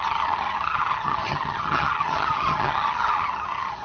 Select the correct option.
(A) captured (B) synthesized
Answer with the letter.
B